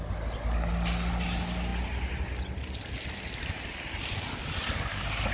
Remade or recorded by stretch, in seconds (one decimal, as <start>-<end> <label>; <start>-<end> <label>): 0.0-5.3 recorded